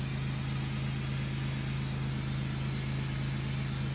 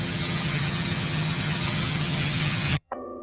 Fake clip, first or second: second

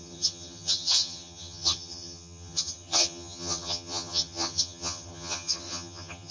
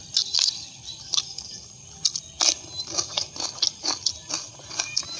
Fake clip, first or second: first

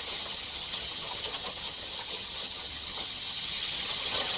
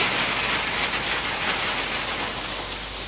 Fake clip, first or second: first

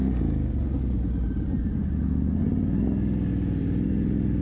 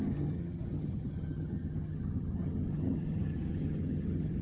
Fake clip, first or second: second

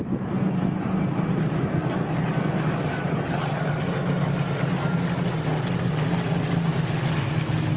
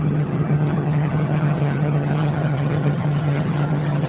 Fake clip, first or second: second